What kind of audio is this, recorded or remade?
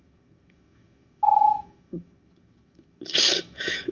remade